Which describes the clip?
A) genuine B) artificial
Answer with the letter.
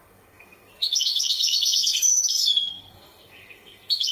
B